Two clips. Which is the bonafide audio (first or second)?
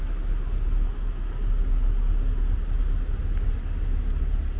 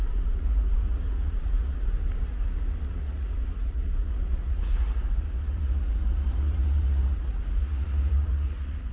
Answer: first